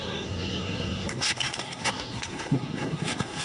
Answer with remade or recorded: remade